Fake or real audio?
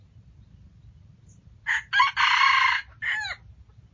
real